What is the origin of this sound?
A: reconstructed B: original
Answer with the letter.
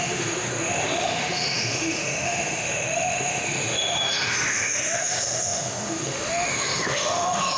A